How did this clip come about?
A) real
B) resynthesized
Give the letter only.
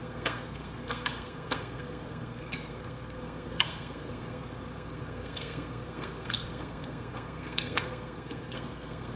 B